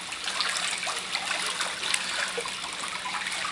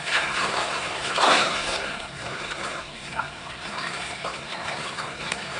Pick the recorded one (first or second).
first